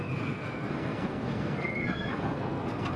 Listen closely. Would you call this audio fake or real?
fake